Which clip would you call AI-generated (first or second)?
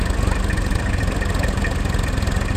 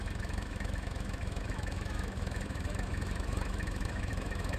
second